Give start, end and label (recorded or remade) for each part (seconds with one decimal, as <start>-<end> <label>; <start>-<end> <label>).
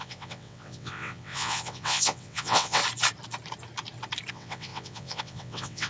0.0-2.8 remade; 2.8-4.3 recorded; 4.3-5.9 remade